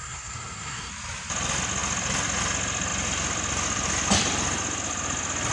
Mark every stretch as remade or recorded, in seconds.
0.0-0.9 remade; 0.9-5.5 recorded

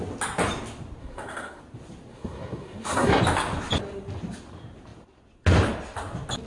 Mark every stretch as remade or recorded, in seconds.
0.0-1.0 recorded; 1.0-1.6 remade; 1.6-2.1 recorded; 2.1-3.2 remade; 3.2-6.5 recorded

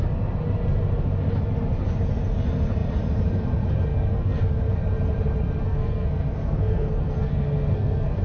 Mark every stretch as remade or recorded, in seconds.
0.0-3.9 recorded; 3.9-4.6 remade; 4.6-5.6 recorded; 5.6-8.2 remade

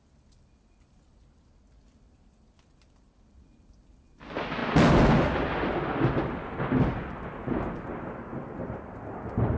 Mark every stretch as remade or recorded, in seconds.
0.0-9.6 recorded

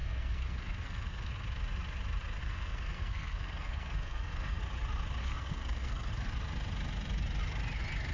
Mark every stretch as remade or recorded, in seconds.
0.0-1.3 remade; 1.3-2.4 recorded; 2.4-4.6 remade; 4.6-5.2 recorded; 5.2-6.1 remade; 6.1-8.1 recorded

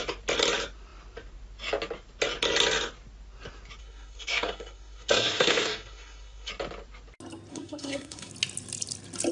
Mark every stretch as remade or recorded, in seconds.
0.0-3.8 recorded; 3.8-6.5 remade; 6.5-7.5 recorded; 7.5-8.3 remade; 8.3-9.3 recorded